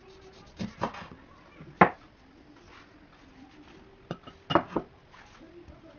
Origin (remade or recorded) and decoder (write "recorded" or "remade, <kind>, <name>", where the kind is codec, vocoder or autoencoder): recorded